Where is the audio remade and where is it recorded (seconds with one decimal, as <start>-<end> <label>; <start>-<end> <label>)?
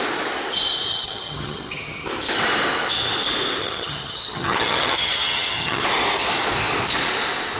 0.0-0.9 recorded; 0.9-2.1 remade; 2.1-3.6 recorded; 3.6-5.8 remade; 5.8-7.6 recorded